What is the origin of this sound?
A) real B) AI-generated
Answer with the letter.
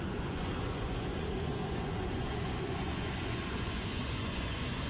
B